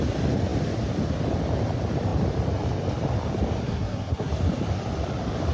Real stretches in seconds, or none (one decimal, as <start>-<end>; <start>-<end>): 0.0-3.6; 4.3-5.5